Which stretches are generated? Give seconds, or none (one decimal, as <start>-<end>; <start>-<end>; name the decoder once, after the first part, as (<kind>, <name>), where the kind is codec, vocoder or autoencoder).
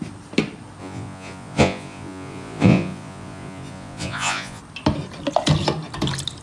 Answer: 0.8-4.6 (vocoder, Vocos)